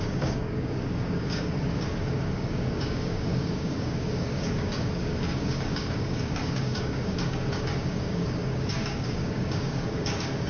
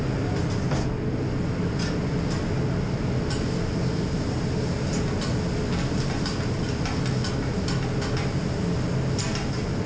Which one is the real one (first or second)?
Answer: second